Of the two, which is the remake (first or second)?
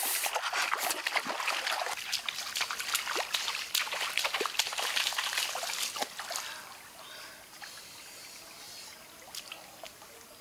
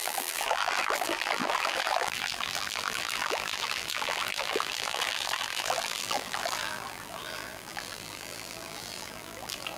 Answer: second